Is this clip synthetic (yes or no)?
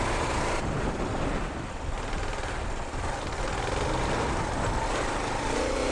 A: yes